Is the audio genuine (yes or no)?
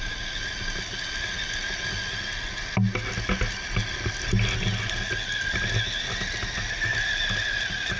yes